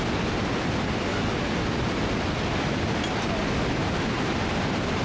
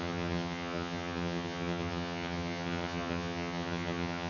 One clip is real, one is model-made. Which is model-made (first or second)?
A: second